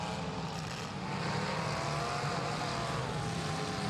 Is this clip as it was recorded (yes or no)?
yes